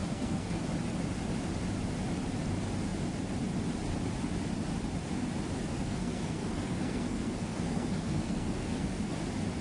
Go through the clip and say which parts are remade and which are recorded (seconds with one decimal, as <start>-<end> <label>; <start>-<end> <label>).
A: 0.0-0.6 remade; 0.6-5.7 recorded; 5.7-9.2 remade; 9.2-9.6 recorded